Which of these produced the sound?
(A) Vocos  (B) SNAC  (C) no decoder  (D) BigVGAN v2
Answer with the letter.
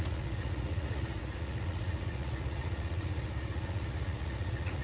A